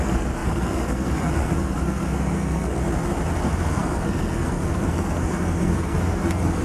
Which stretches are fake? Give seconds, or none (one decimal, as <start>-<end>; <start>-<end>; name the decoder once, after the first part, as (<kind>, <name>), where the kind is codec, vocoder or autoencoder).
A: 0.0-2.8 (codec, SNAC); 3.4-6.6